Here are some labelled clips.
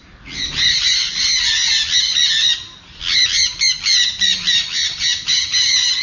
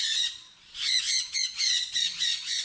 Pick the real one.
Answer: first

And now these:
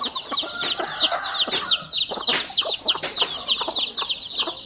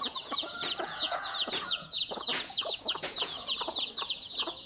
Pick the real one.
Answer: first